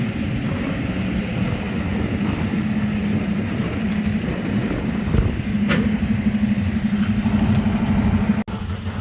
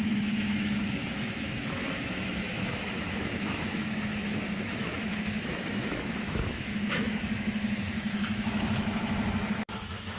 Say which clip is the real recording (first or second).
first